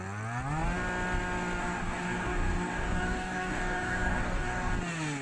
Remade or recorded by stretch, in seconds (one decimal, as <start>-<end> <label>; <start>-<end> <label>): 0.0-1.6 recorded; 1.6-4.7 remade; 4.7-5.2 recorded

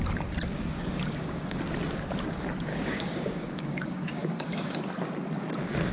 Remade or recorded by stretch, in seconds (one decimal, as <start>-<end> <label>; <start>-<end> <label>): 0.0-0.5 recorded; 0.5-1.6 remade; 1.6-2.7 recorded; 2.7-4.8 remade; 4.8-5.9 recorded

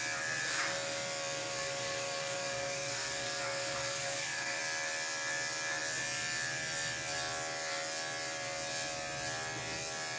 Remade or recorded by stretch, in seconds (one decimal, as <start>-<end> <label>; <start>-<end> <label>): 0.0-1.4 recorded; 1.4-4.6 remade; 4.6-10.2 recorded

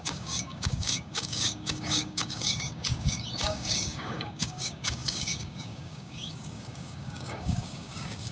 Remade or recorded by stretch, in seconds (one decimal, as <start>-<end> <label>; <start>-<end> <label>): 0.0-8.3 remade

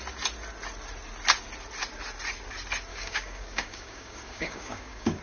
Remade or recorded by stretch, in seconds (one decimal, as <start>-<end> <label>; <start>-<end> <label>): 0.0-2.9 recorded; 2.9-5.2 remade

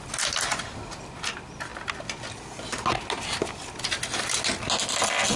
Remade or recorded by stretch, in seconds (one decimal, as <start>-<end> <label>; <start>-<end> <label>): 0.0-5.4 recorded

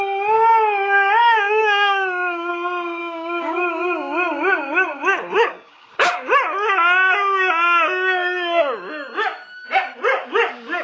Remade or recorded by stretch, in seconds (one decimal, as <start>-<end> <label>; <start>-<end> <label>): 0.0-1.2 recorded; 1.2-2.5 remade; 2.5-3.0 recorded; 3.0-6.3 remade; 6.3-10.8 recorded